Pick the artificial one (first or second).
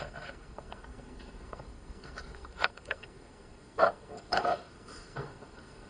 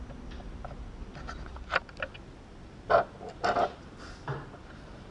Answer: first